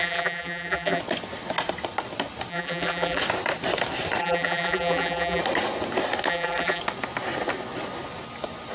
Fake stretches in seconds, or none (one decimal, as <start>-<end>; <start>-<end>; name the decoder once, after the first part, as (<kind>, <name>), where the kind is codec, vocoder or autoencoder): 0.0-1.0 (vocoder, BigVGAN v2); 2.5-3.2; 4.2-5.4; 6.3-6.8